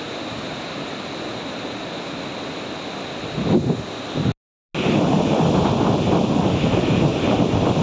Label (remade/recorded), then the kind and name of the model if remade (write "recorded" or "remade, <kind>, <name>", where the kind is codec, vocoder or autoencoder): recorded